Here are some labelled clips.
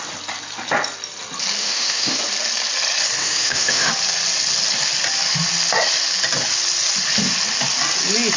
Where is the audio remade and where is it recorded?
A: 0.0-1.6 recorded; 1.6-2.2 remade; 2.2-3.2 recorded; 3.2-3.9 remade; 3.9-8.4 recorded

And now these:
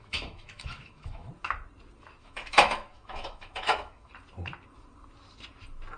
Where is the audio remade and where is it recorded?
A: 0.0-1.3 remade; 1.3-2.2 recorded; 2.2-4.1 remade; 4.1-6.0 recorded

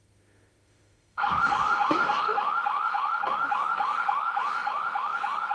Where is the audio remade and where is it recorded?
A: 0.0-5.5 remade

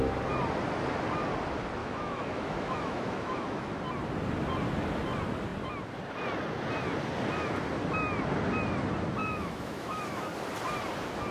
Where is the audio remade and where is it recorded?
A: 0.0-1.8 recorded; 1.8-3.8 remade; 3.8-9.2 recorded; 9.2-10.3 remade; 10.3-11.3 recorded

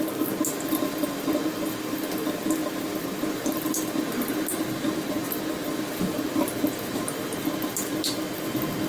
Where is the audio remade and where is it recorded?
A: 0.0-8.9 recorded

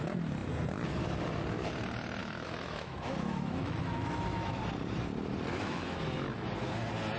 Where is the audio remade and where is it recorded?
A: 0.0-2.2 recorded; 2.2-4.6 remade; 4.6-5.5 recorded; 5.5-6.0 remade; 6.0-7.2 recorded